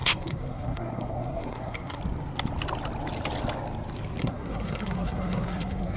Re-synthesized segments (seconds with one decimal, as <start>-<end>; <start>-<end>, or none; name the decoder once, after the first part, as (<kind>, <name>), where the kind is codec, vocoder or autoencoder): 0.0-2.0 (codec, SNAC); 4.2-6.0